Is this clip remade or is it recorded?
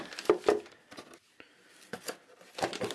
recorded